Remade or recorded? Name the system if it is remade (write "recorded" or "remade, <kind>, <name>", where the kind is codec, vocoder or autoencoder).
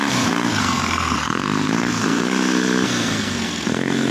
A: remade, codec, SNAC